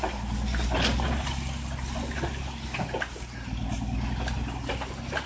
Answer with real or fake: real